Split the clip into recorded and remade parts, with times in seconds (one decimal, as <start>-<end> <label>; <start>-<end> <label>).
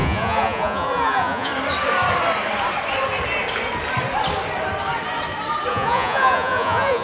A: 0.0-1.5 remade; 1.5-5.7 recorded; 5.7-7.0 remade